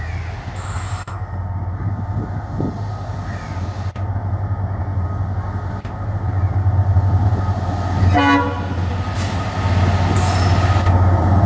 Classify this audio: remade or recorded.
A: recorded